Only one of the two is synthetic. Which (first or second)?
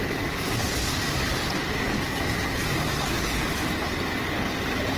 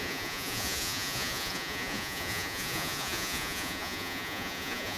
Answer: second